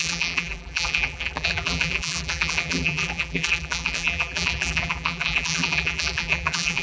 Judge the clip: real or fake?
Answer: fake